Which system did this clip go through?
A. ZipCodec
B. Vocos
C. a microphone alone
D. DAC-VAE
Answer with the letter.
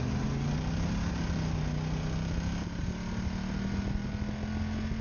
C